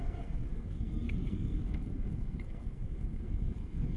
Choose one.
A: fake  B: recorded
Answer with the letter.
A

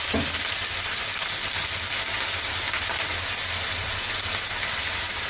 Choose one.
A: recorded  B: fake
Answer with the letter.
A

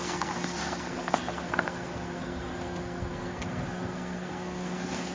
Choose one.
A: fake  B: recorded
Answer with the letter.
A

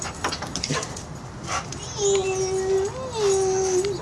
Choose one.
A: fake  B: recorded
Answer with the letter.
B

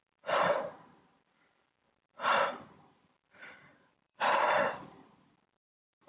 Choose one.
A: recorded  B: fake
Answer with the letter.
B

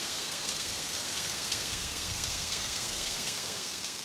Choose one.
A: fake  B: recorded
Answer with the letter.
A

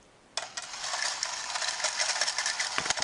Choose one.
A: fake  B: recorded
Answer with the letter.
B